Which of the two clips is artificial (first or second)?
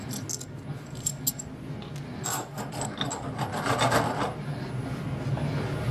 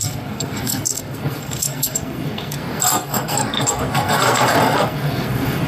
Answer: second